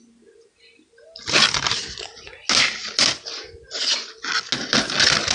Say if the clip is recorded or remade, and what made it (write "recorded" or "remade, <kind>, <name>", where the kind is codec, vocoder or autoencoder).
recorded